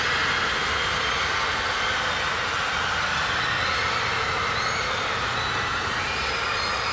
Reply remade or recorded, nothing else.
recorded